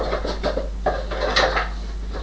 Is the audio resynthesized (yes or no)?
no